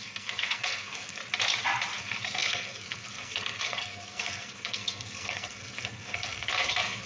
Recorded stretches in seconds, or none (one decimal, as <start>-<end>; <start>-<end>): 1.2-2.0